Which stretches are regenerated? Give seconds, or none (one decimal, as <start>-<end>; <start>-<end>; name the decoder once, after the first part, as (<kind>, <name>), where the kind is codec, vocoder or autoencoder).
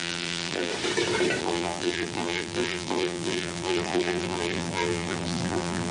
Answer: 0.0-0.7 (vocoder, BigVGAN v2); 1.4-5.9